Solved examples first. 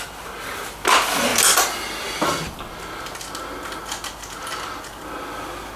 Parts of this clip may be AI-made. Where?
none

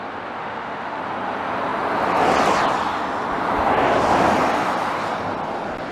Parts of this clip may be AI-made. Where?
0.4-1.0

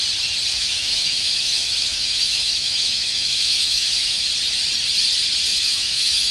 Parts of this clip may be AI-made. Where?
0.5-4.3; 5.5-6.3